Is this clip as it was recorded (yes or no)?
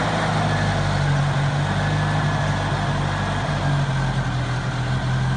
yes